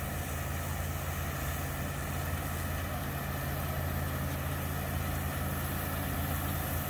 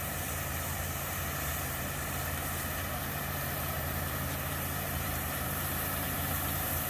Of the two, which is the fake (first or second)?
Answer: second